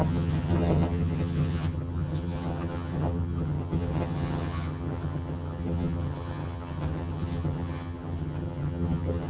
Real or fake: fake